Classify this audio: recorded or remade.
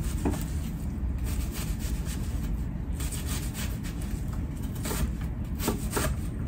recorded